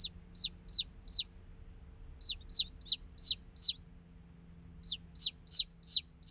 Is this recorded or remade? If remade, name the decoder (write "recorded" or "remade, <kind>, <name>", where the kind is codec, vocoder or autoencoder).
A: recorded